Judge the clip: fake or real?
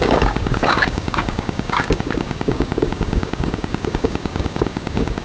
fake